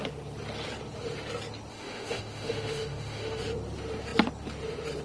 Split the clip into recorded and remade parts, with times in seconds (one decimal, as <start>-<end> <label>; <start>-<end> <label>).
0.0-1.7 recorded; 1.7-3.4 remade; 3.4-5.0 recorded